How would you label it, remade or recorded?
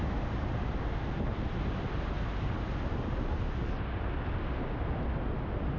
recorded